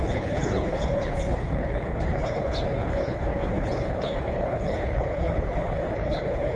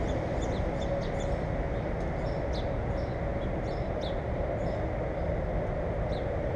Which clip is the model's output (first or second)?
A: first